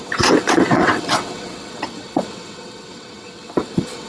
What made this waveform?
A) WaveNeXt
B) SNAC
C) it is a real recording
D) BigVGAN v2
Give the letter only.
A